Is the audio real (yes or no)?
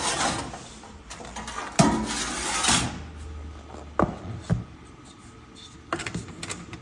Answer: yes